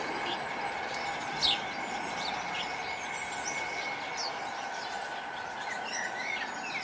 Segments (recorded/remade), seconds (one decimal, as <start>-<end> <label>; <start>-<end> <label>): 0.0-6.8 recorded